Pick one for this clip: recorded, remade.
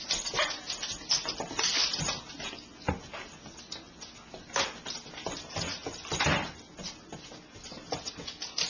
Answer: recorded